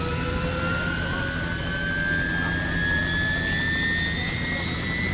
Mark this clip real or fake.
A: real